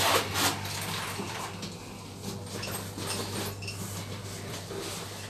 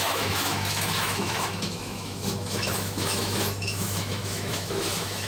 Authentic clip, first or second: first